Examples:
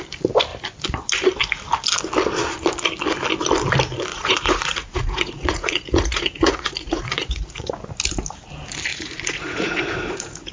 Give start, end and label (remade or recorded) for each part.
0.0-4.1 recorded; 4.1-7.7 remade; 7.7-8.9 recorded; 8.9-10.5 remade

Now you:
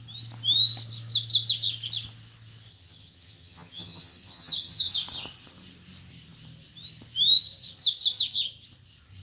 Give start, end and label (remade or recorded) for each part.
0.0-2.7 recorded; 2.7-4.9 remade; 4.9-9.2 recorded